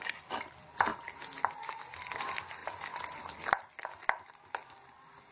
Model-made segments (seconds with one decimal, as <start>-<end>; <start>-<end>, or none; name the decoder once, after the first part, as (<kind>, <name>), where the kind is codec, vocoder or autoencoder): none